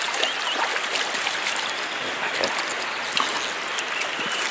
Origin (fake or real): real